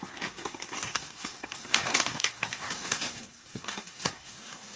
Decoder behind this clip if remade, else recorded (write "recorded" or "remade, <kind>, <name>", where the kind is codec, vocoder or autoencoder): remade, codec, SNAC